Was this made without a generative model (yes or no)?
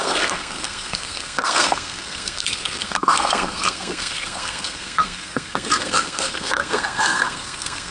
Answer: no